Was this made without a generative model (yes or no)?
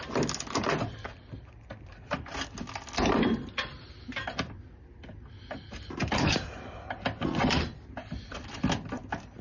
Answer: yes